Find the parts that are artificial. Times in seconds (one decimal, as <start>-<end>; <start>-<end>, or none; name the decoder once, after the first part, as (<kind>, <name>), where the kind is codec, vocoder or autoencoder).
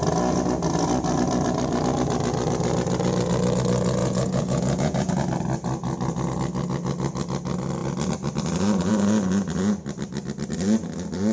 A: 4.0-5.1 (vocoder, Vocos)